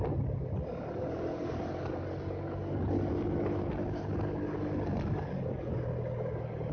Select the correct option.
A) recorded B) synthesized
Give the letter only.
A